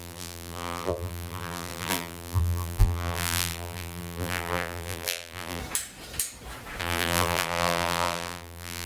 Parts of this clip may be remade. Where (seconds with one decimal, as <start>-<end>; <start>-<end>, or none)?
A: 0.0-5.6; 6.8-8.9